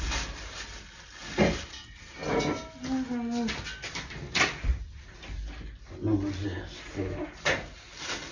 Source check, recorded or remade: recorded